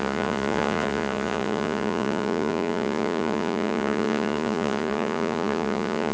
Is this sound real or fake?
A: fake